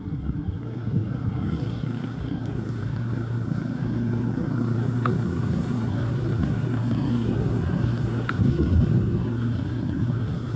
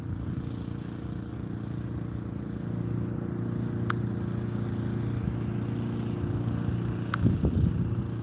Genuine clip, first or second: second